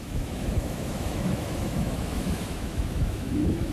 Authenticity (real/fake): fake